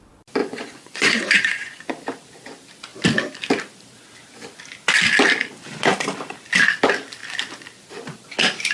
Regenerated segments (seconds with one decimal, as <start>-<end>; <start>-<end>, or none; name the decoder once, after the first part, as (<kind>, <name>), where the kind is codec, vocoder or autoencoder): 0.4-1.9 (vocoder, Vocos)